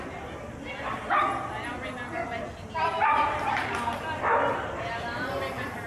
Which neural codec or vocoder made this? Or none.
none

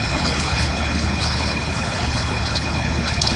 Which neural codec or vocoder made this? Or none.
codec, HILCodec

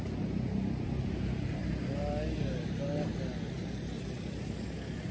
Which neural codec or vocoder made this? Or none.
none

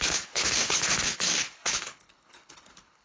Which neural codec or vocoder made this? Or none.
codec, HILCodec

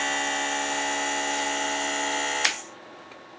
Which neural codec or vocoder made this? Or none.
none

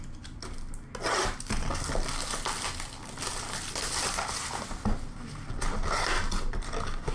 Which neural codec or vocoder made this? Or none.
none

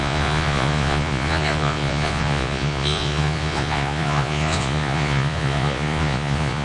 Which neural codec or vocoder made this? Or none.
vocoder, Vocos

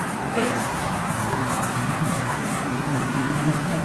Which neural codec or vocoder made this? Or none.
codec, SNAC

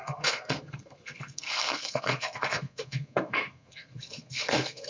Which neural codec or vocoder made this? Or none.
codec, SNAC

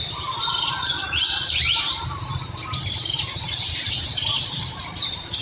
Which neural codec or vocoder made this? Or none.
vocoder, BigVGAN v2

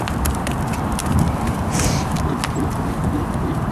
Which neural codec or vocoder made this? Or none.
none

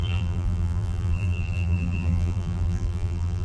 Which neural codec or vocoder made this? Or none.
vocoder, BigVGAN v2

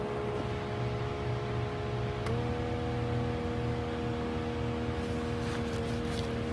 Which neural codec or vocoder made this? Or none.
none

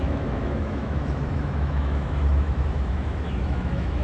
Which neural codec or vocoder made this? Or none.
autoencoder, DAC-VAE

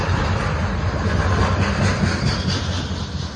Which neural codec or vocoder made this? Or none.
none